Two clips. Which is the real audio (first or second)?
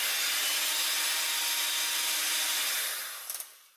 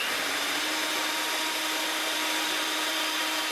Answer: first